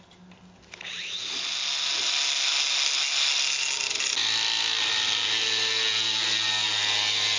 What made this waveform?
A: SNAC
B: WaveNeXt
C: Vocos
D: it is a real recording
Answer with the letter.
D